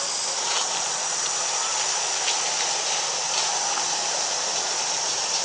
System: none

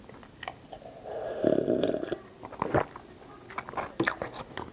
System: none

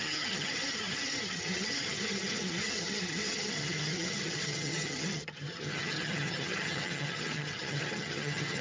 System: vocoder, HiFi-GAN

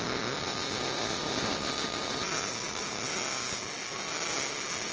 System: none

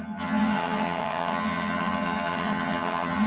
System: vocoder, HiFi-GAN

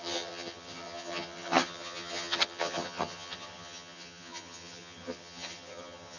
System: vocoder, HiFi-GAN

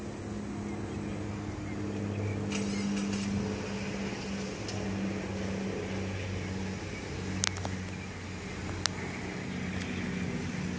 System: none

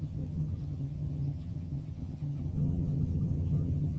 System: vocoder, HiFi-GAN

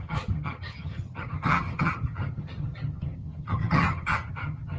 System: vocoder, HiFi-GAN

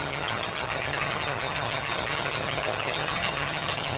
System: vocoder, HiFi-GAN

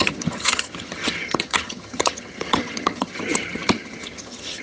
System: vocoder, HiFi-GAN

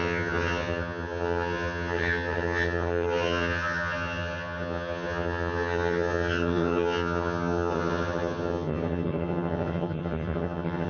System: vocoder, HiFi-GAN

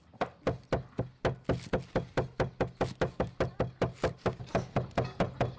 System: none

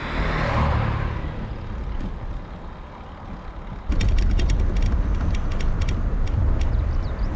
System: none